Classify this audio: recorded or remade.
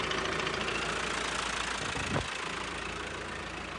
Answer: recorded